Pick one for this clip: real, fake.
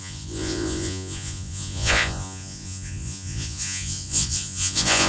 fake